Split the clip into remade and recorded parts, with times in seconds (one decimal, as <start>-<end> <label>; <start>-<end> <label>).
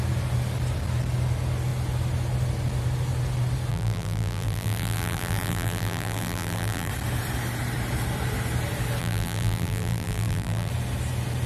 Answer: 0.0-3.7 recorded; 3.7-6.9 remade; 6.9-9.0 recorded; 9.0-10.7 remade; 10.7-11.5 recorded